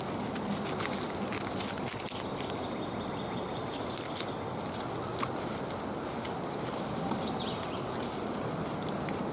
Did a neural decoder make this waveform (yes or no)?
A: no